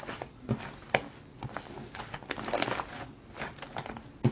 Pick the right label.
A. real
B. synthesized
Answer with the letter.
A